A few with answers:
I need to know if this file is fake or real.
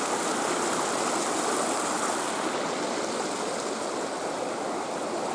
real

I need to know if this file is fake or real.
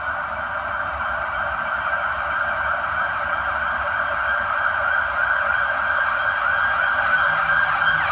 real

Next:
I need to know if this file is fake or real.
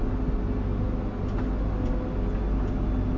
real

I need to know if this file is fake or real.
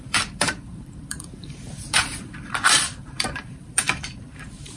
fake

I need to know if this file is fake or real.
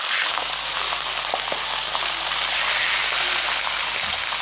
real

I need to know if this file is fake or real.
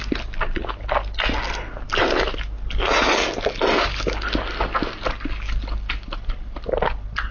real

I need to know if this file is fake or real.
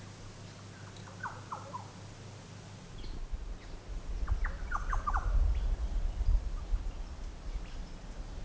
real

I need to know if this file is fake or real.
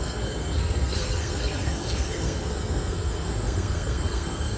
fake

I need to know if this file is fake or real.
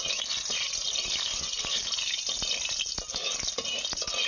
real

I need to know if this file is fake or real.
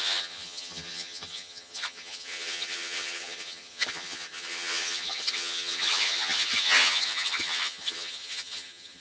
fake